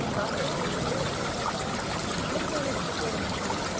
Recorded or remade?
recorded